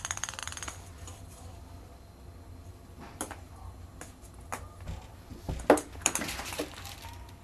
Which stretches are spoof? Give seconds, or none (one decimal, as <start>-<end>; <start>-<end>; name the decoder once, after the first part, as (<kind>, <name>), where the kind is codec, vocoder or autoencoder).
0.4-4.5 (vocoder, BigVGAN v2); 5.3-6.6